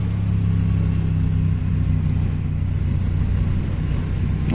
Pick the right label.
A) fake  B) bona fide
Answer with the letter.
B